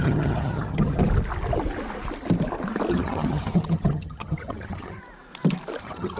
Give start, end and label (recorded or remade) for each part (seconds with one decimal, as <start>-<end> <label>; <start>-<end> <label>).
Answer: 0.0-1.0 remade; 1.0-2.9 recorded; 2.9-5.0 remade; 5.0-5.8 recorded; 5.8-6.2 remade